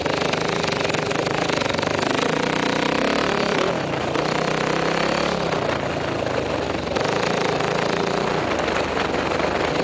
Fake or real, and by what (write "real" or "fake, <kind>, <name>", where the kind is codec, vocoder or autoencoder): real